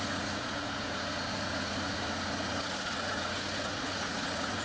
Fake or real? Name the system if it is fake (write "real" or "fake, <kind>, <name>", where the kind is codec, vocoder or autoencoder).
fake, vocoder, Vocos